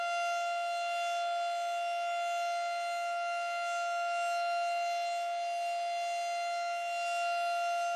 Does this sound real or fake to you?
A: real